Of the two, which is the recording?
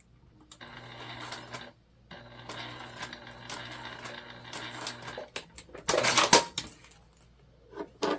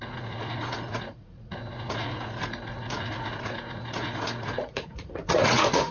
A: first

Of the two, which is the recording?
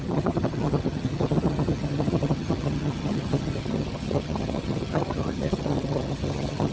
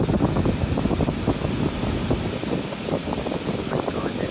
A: second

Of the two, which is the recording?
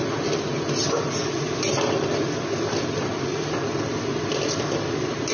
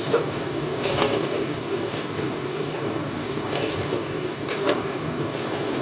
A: first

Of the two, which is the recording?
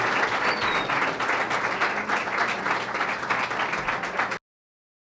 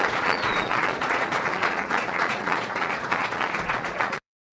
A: first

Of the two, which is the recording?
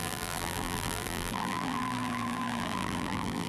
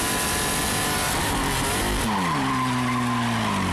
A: second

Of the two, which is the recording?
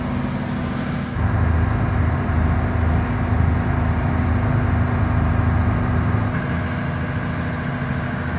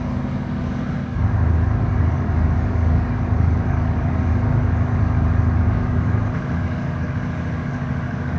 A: first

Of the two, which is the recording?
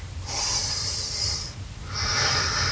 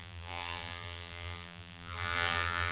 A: first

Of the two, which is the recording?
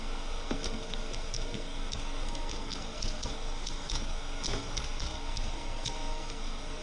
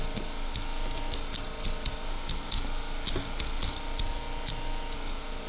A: second